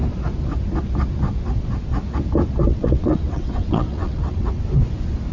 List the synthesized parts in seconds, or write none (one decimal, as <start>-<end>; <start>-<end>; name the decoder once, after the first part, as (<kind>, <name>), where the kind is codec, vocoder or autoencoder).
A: 2.7-4.6 (vocoder, WaveNeXt)